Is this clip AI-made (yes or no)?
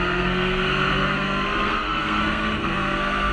yes